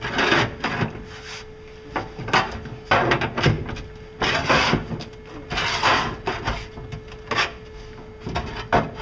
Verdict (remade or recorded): recorded